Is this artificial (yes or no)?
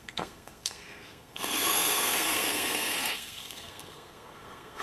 yes